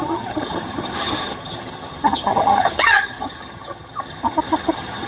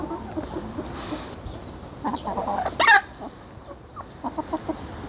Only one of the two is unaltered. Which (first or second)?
second